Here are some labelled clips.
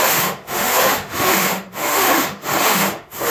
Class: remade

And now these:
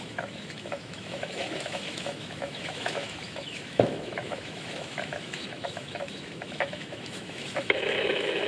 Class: remade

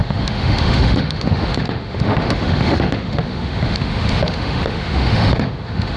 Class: remade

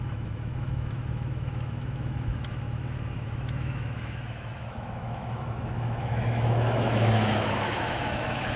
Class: remade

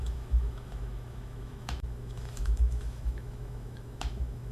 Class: remade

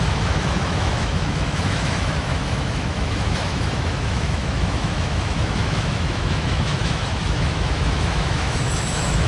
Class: remade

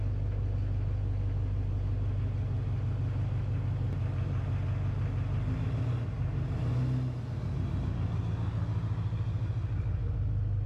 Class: recorded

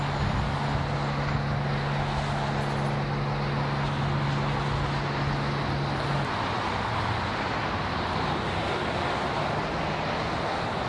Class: recorded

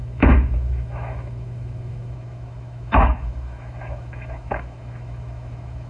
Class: remade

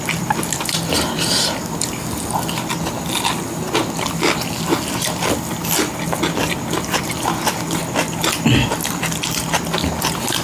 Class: recorded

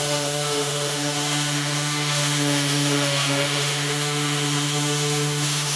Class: remade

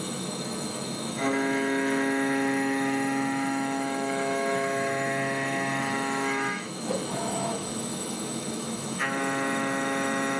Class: remade